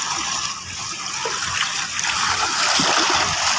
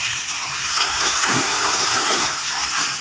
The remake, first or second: second